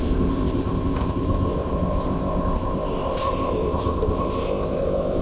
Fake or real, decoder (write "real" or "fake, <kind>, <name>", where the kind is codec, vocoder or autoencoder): fake, codec, ZipCodec